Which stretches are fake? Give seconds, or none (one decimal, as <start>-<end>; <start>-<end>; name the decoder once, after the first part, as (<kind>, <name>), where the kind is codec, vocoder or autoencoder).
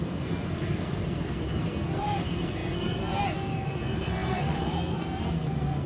0.0-5.9 (codec, SNAC)